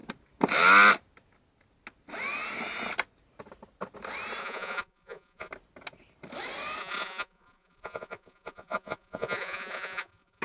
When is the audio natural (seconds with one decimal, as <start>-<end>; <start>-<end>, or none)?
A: 0.0-4.4; 5.5-6.8